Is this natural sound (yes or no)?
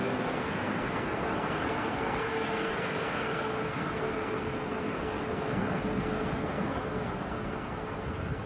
no